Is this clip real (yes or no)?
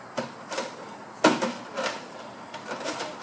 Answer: yes